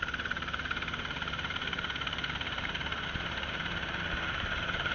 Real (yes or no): no